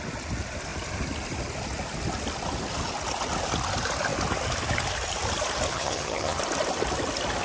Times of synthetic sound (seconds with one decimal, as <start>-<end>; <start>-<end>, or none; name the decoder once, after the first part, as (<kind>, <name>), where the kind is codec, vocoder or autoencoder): 5.7-6.4 (vocoder, HiFi-GAN)